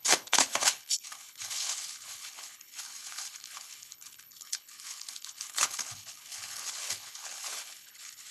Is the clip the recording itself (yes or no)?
no